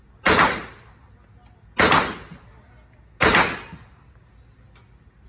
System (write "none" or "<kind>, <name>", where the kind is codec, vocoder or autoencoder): none